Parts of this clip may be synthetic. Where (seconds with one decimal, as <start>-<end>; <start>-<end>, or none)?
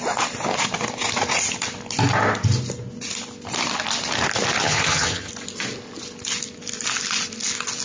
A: 4.6-5.3